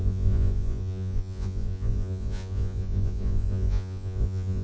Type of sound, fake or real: fake